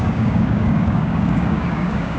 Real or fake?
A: fake